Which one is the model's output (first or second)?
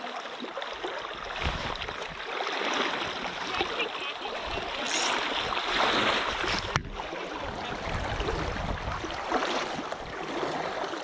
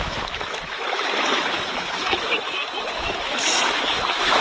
second